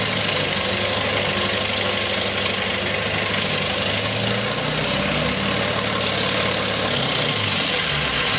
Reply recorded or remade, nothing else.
recorded